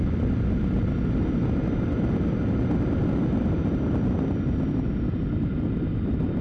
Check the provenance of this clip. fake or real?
real